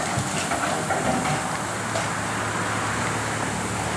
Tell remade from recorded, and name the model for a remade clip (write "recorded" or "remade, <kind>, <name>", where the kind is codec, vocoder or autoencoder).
recorded